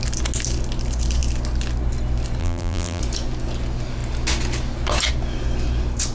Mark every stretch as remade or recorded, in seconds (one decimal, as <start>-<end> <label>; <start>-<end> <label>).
0.0-2.4 recorded; 2.4-3.0 remade; 3.0-6.1 recorded